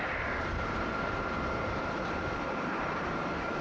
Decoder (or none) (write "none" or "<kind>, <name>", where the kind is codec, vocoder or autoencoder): vocoder, BigVGAN v2